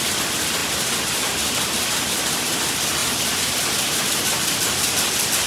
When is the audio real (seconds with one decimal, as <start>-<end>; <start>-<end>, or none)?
0.0-5.5